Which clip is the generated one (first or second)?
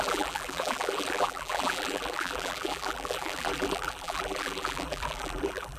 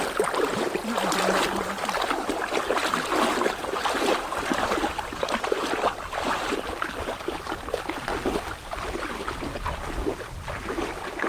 first